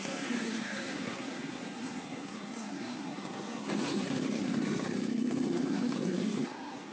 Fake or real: fake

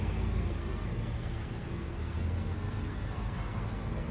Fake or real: fake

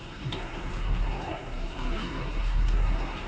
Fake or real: fake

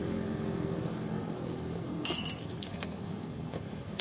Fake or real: fake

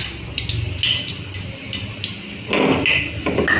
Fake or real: real